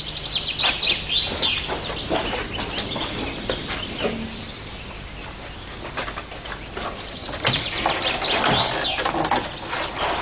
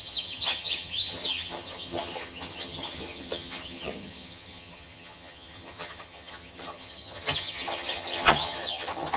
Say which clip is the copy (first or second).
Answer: second